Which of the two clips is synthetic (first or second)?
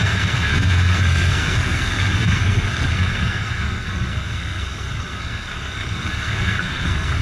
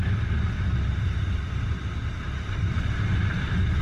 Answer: first